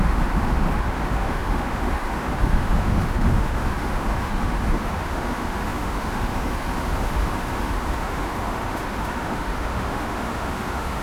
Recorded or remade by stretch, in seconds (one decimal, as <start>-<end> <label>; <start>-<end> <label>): 0.0-11.0 remade